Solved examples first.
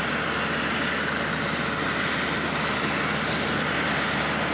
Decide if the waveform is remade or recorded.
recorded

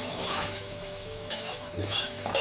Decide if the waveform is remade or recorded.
remade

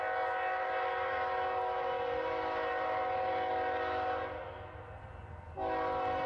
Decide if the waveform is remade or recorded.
recorded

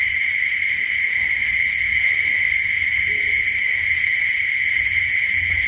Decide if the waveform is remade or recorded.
recorded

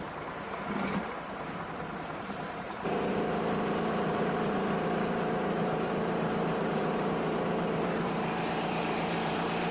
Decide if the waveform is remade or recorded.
remade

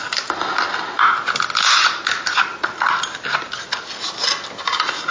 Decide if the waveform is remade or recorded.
recorded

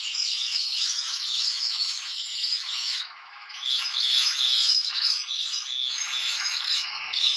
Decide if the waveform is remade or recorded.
remade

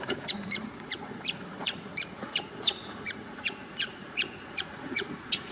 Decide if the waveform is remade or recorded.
remade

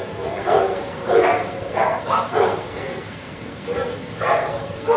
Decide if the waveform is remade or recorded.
remade